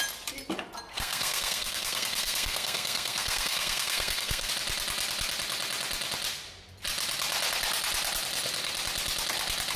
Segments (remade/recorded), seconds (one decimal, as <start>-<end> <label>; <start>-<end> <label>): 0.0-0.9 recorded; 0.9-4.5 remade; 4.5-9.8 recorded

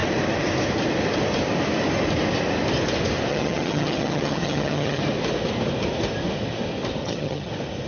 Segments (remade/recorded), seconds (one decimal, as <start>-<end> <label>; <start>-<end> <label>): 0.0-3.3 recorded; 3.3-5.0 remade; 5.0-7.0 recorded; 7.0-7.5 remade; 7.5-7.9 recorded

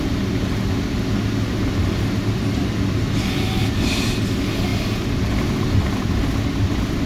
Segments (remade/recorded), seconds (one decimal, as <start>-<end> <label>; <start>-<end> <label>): 0.0-7.1 recorded

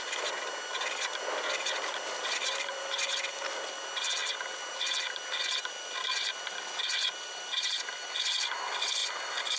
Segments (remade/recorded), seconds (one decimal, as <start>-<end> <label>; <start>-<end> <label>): 0.0-9.6 recorded

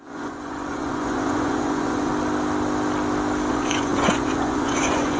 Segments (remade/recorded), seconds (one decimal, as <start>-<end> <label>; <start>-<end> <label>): 0.0-2.1 remade; 2.1-3.5 recorded; 3.5-5.2 remade

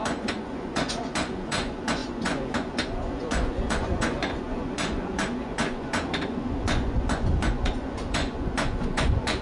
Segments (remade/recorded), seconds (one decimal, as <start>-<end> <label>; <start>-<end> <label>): 0.0-9.4 remade

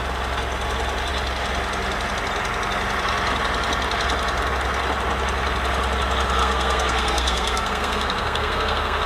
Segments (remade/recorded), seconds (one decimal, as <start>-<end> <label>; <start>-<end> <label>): 0.0-6.4 recorded; 6.4-9.1 remade

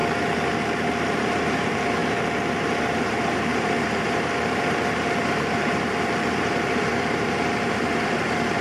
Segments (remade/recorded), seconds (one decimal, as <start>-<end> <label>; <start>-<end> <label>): 0.0-0.9 recorded; 0.9-2.0 remade; 2.0-2.9 recorded; 2.9-8.6 remade